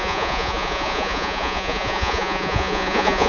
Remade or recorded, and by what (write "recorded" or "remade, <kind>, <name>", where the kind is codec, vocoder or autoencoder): remade, vocoder, Vocos